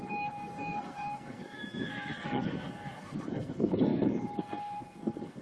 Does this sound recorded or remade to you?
remade